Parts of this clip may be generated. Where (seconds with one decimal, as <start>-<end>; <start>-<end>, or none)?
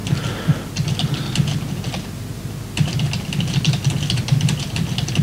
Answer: none